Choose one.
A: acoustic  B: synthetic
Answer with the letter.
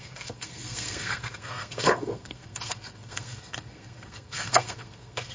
B